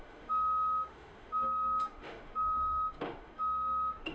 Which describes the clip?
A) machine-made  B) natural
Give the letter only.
A